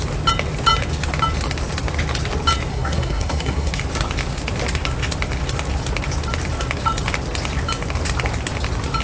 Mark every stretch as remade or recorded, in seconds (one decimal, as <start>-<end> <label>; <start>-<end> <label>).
0.0-2.7 recorded; 2.7-3.7 remade; 3.7-9.0 recorded